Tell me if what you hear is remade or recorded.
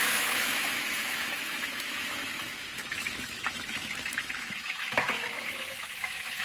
remade